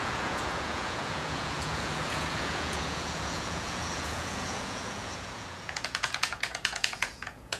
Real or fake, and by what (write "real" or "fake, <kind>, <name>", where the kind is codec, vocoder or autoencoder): fake, vocoder, Vocos